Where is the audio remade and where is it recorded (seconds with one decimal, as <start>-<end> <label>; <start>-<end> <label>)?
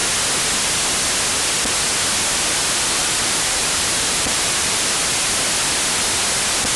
0.0-3.0 recorded; 3.0-5.0 remade; 5.0-6.8 recorded